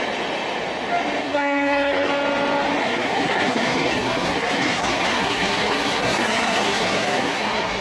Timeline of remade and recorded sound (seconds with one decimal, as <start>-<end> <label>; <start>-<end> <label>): 0.0-1.2 recorded; 1.2-2.1 remade; 2.1-2.8 recorded; 2.8-7.8 remade